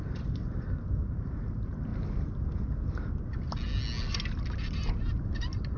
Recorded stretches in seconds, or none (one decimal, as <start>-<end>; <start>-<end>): 1.9-5.2